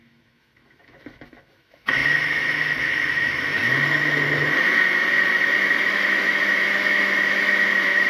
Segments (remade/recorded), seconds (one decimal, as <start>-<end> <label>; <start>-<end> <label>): 0.0-3.6 remade; 3.6-5.8 recorded; 5.8-8.1 remade

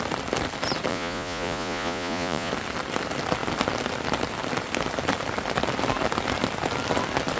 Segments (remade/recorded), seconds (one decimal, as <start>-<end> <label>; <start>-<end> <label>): 0.0-0.9 recorded; 0.9-2.5 remade; 2.5-7.4 recorded

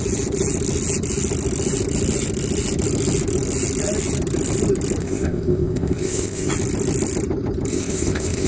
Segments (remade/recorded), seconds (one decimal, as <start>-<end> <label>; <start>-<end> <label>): 0.0-5.0 recorded; 5.0-6.5 remade; 6.5-7.7 recorded; 7.7-8.5 remade

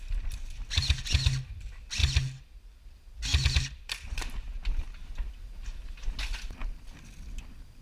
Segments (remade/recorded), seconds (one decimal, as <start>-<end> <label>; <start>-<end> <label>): 0.0-7.8 recorded